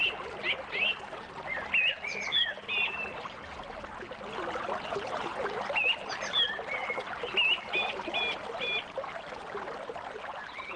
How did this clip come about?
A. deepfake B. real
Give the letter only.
B